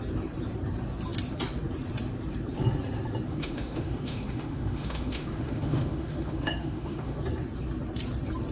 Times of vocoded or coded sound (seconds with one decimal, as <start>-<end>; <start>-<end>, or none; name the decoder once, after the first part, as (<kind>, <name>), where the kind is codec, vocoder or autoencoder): 3.3-7.2 (autoencoder, DAC-VAE)